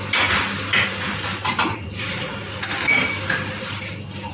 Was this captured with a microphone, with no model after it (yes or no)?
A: yes